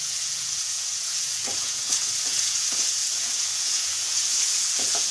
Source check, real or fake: fake